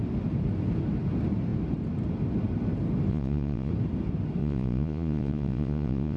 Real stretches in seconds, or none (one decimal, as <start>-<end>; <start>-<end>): 0.0-3.1; 3.7-4.4